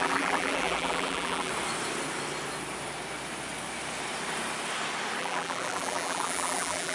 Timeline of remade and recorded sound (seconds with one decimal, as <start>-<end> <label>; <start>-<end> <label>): 0.0-1.5 remade; 1.5-5.2 recorded; 5.2-6.9 remade

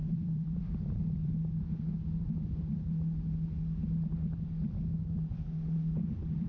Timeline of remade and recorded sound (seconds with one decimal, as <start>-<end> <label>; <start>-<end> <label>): 0.0-1.3 remade; 1.3-6.5 recorded

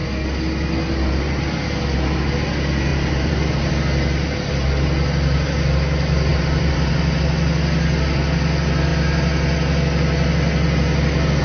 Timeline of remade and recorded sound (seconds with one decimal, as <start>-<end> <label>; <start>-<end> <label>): 0.0-2.9 recorded; 2.9-3.7 remade; 3.7-6.3 recorded; 6.3-7.0 remade; 7.0-11.4 recorded